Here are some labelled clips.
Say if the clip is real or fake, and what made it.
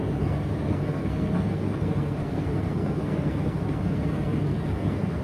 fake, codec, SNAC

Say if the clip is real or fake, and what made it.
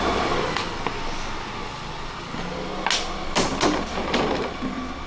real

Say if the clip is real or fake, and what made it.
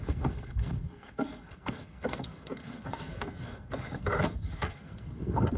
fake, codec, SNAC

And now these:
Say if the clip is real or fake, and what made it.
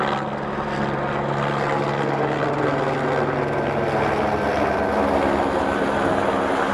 real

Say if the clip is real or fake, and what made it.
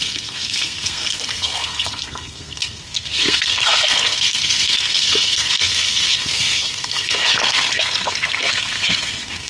fake, codec, SNAC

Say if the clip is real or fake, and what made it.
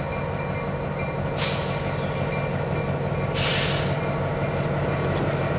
real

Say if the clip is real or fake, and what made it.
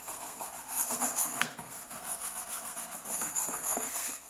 fake, codec, SNAC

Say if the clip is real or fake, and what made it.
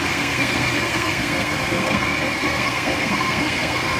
fake, codec, SNAC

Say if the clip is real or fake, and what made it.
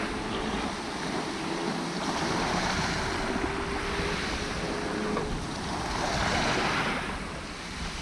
real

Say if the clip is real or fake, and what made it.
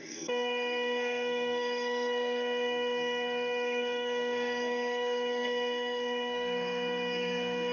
fake, codec, SNAC